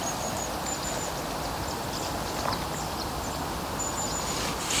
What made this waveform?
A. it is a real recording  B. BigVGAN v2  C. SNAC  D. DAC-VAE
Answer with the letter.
A